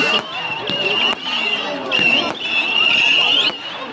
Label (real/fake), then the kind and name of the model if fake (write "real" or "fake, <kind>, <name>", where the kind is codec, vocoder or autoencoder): real